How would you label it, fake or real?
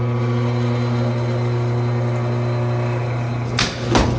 real